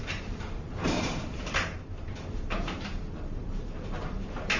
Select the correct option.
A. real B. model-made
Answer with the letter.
B